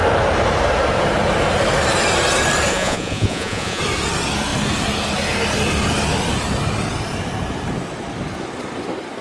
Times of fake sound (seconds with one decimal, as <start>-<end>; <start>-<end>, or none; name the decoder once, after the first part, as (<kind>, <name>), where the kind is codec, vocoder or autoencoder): 2.7-3.8 (vocoder, Vocos)